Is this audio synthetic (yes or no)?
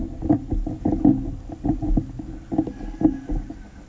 no